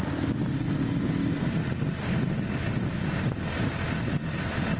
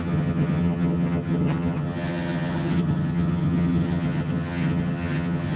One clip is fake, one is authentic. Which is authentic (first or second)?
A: first